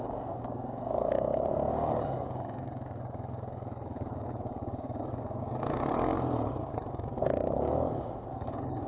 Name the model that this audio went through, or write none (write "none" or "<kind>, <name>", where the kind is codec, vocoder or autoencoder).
codec, DAC